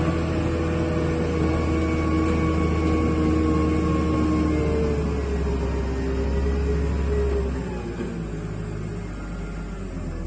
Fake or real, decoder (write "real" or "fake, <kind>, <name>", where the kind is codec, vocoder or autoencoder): real